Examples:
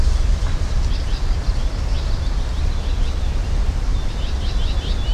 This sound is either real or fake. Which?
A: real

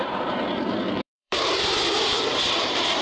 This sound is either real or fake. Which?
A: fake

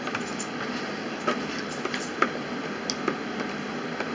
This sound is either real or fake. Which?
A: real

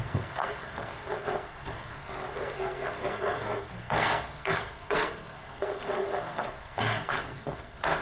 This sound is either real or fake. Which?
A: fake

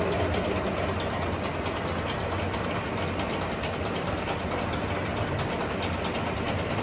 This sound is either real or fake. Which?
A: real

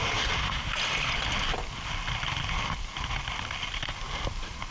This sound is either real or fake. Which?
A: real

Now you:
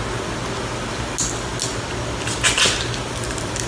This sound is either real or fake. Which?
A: real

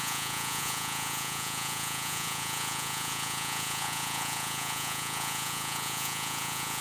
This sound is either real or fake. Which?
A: fake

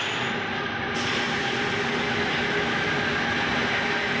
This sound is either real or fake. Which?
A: real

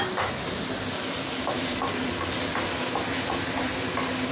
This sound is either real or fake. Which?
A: real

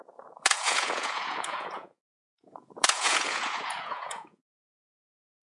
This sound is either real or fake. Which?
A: fake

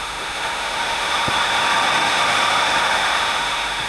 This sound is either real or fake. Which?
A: fake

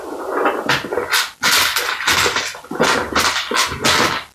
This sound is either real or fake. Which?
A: real